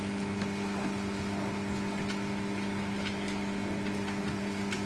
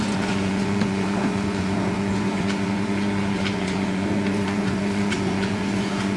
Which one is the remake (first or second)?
second